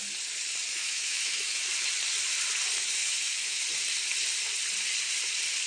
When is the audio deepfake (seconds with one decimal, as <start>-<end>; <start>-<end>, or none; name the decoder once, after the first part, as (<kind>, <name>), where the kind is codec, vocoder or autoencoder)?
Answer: 0.7-1.7 (autoencoder, DAC-VAE); 3.0-3.6

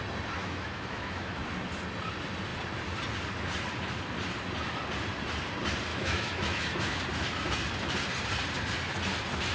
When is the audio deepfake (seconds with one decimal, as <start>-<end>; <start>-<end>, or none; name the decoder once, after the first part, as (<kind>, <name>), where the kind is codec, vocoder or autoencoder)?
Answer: 0.4-1.4 (autoencoder, DAC-VAE); 5.9-7.0